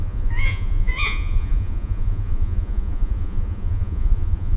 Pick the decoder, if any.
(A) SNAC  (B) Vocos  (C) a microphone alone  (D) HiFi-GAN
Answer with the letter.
B